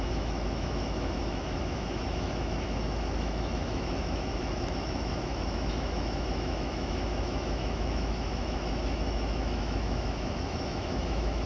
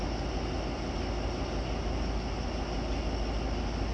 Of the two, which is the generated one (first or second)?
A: first